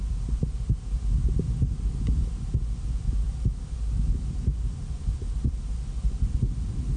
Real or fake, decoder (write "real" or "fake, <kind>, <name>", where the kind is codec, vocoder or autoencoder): real